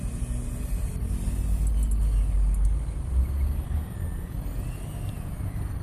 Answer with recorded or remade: recorded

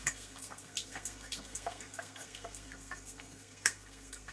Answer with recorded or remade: remade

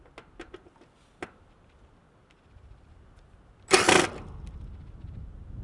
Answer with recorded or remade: recorded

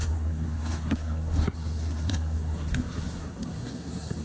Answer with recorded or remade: remade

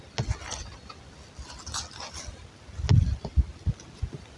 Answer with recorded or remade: recorded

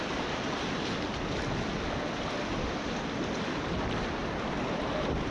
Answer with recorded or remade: recorded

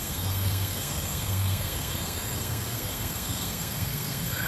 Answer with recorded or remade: remade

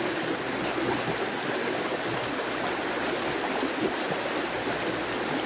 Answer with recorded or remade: recorded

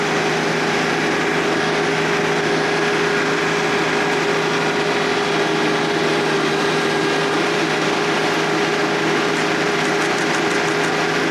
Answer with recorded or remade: recorded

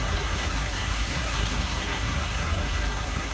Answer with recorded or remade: remade